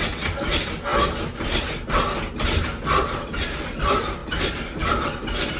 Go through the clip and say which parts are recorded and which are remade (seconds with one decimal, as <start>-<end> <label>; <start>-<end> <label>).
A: 0.0-5.6 recorded

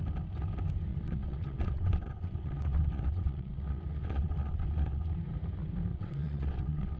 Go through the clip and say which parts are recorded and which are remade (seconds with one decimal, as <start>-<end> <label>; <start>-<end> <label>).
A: 0.0-0.9 recorded; 0.9-5.1 remade; 5.1-5.9 recorded; 5.9-7.0 remade